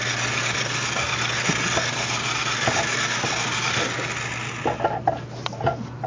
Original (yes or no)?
yes